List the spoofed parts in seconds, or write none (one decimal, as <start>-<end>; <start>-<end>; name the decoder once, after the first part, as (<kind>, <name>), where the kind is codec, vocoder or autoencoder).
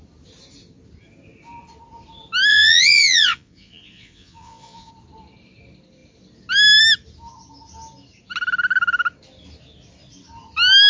2.5-4.9 (vocoder, Vocos)